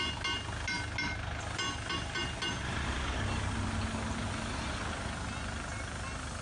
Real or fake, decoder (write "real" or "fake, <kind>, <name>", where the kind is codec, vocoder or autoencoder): real